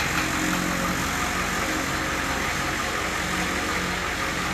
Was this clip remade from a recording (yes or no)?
no